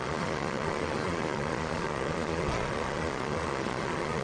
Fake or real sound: fake